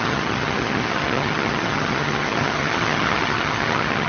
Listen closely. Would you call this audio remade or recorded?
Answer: remade